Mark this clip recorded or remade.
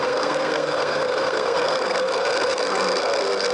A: remade